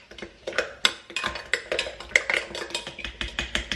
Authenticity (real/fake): real